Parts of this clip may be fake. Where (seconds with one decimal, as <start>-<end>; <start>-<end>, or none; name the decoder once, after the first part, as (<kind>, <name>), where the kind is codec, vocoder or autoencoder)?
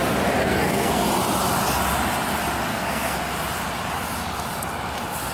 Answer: 0.4-1.1 (codec, SNAC); 2.7-3.2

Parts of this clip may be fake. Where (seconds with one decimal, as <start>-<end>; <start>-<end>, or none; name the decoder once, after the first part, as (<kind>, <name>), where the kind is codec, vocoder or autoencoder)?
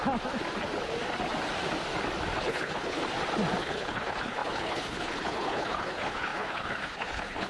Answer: 2.4-3.0 (codec, HILCodec); 3.6-7.5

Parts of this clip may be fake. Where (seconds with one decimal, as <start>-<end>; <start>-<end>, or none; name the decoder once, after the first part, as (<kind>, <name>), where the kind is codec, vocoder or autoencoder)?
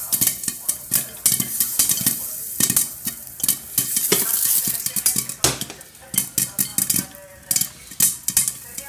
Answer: none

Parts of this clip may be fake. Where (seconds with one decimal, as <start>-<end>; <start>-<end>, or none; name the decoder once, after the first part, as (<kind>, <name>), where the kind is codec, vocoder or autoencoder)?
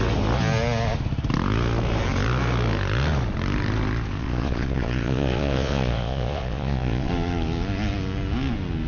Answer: 4.2-7.1 (vocoder, Vocos)